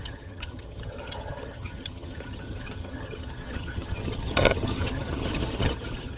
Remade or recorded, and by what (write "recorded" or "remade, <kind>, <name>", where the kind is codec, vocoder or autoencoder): remade, vocoder, HiFi-GAN